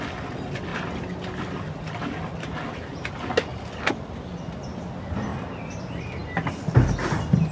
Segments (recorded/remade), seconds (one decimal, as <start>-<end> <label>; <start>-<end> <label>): 0.0-7.5 recorded